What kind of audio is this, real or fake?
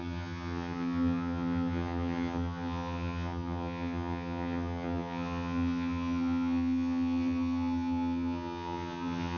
fake